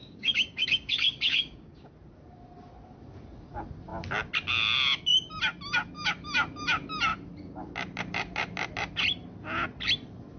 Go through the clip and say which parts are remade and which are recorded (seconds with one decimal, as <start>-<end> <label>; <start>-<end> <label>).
0.0-1.9 remade; 1.9-10.4 recorded